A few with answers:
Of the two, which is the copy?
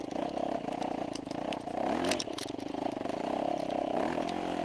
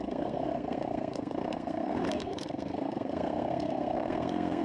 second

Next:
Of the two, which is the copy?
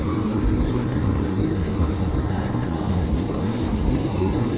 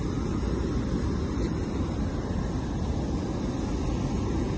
first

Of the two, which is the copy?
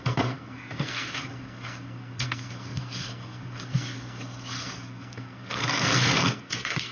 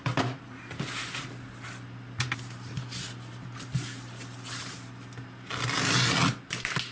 first